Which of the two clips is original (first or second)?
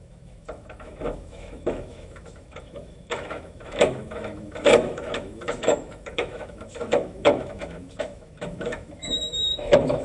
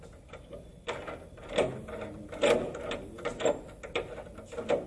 second